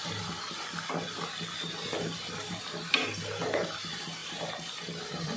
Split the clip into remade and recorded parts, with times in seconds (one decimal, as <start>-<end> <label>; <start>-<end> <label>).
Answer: 0.0-5.4 recorded